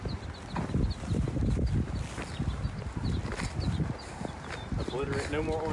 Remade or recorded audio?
recorded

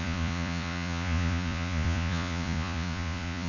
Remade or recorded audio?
remade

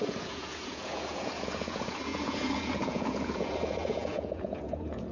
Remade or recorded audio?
remade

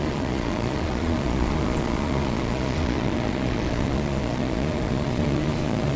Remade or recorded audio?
remade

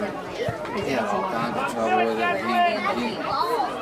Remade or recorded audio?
recorded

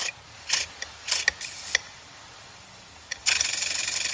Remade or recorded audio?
recorded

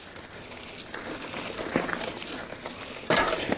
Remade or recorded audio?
recorded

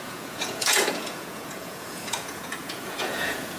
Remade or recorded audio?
remade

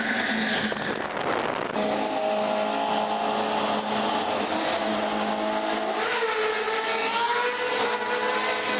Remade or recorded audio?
recorded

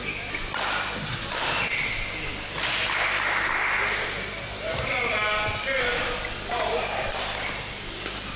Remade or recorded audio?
recorded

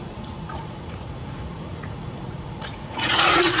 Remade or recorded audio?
remade